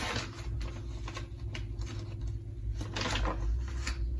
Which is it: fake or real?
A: real